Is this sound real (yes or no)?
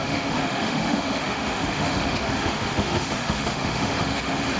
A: no